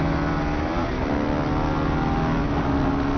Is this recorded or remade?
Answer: recorded